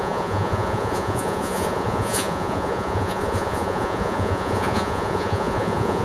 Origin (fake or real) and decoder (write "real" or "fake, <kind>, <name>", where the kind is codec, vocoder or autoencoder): fake, vocoder, Vocos